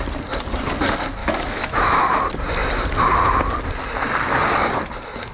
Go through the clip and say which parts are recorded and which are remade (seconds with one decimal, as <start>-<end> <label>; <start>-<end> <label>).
0.0-1.2 recorded; 1.2-2.0 remade; 2.0-5.3 recorded